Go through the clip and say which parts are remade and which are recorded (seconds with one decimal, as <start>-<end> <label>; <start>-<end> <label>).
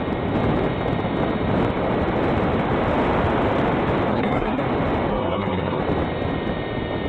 0.0-4.1 recorded; 4.1-4.6 remade; 4.6-5.1 recorded; 5.1-5.8 remade; 5.8-7.1 recorded